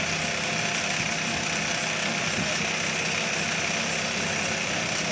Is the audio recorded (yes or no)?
yes